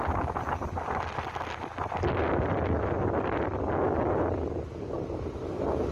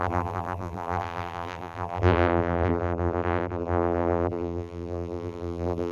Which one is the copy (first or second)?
second